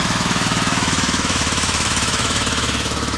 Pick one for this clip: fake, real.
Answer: fake